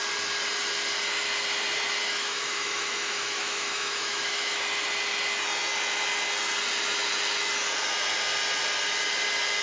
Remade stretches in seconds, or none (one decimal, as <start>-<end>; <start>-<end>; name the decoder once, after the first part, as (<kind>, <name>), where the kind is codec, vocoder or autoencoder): 2.0-4.6 (autoencoder, DAC-VAE)